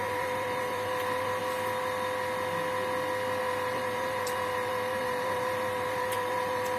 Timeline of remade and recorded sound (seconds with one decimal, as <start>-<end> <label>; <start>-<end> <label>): 0.0-1.4 remade; 1.4-3.4 recorded; 3.4-6.8 remade